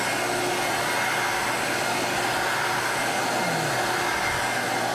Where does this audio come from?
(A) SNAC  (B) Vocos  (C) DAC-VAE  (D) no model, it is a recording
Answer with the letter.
D